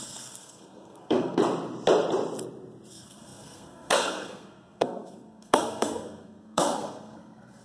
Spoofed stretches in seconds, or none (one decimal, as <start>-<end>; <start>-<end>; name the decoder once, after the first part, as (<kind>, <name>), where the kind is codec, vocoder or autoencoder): 0.0-1.4 (codec, SNAC); 2.9-7.6